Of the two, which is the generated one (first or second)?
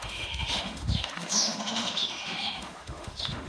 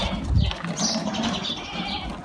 first